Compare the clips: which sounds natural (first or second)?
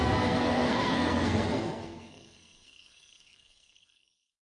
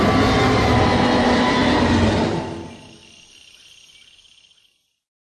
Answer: second